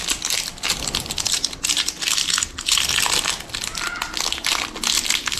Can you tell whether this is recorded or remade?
recorded